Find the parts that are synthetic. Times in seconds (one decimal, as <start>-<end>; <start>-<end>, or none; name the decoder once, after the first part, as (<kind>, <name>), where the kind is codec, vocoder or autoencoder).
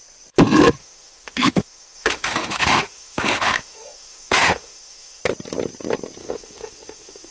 0.8-5.2 (autoencoder, DAC-VAE); 6.2-7.3